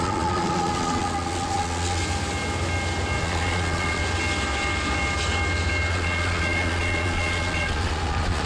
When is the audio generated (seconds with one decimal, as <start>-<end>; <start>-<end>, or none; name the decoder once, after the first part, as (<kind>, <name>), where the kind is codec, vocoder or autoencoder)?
0.0-2.0 (vocoder, Vocos); 3.2-4.0; 5.9-8.5